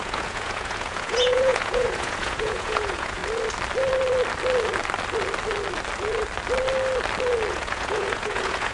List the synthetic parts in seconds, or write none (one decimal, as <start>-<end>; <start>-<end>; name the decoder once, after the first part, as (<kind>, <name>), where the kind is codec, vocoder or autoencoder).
0.0-3.2 (vocoder, Vocos); 7.5-8.7